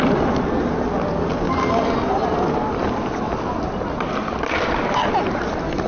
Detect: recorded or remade recorded